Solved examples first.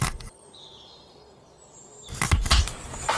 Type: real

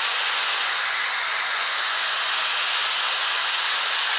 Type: fake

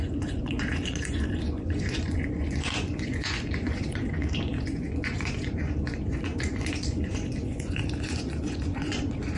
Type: fake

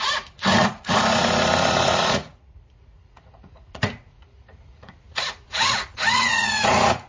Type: fake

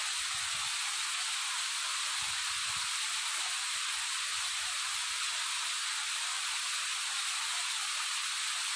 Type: real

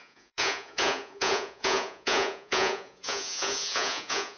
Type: fake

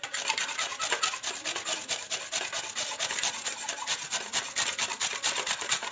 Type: real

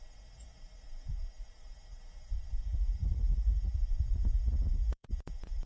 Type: fake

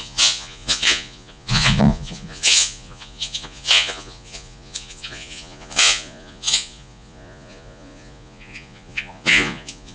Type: fake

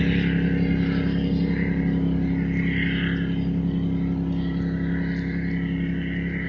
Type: real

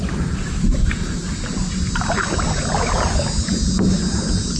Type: real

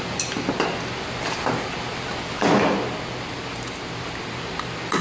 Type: real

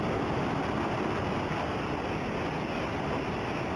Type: real